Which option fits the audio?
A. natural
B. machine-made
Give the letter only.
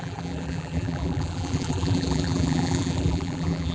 B